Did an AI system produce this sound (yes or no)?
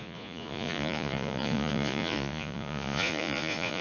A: yes